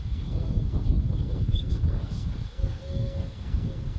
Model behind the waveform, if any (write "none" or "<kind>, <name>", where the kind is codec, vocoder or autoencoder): codec, SNAC